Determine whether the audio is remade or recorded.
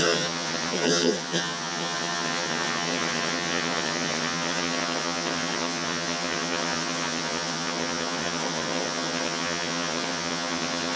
remade